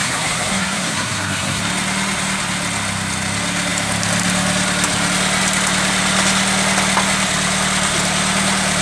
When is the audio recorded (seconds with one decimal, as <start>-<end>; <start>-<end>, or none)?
1.6-8.8